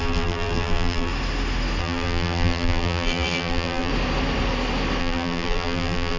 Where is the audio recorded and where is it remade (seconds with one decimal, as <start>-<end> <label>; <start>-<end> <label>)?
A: 0.0-1.1 remade; 1.1-1.8 recorded; 1.8-3.9 remade; 3.9-5.0 recorded; 5.0-6.2 remade